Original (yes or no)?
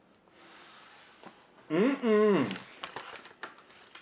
yes